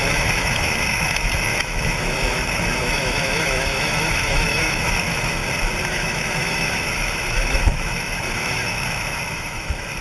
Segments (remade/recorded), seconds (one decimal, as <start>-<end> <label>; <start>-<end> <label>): 0.0-5.4 remade; 5.4-5.9 recorded; 5.9-10.0 remade